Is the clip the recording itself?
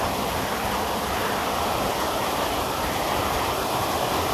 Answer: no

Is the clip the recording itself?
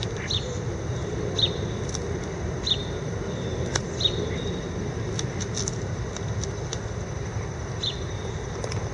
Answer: yes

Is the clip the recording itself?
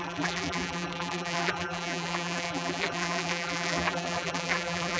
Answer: no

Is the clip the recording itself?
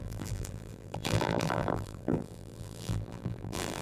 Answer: no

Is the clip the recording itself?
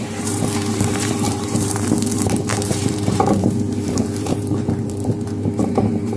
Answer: no